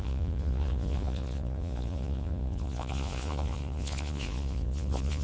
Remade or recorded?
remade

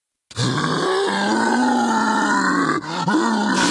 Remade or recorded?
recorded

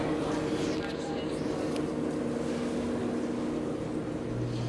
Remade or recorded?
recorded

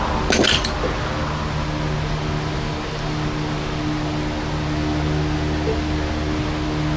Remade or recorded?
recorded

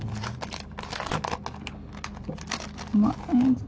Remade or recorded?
recorded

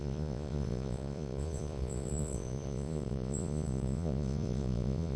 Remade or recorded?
remade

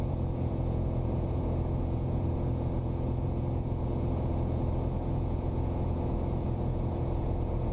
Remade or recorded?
remade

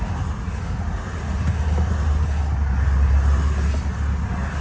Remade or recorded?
recorded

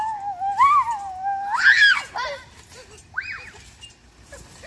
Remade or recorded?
recorded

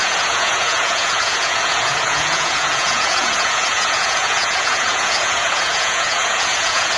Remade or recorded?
remade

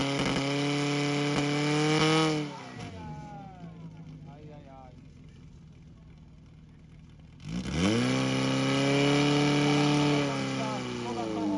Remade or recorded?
recorded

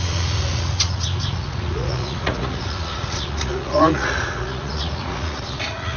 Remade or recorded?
remade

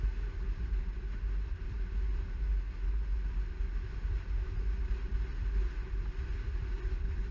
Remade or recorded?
recorded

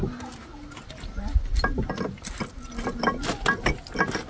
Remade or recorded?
recorded